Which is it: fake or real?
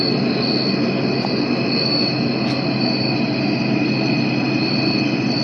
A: real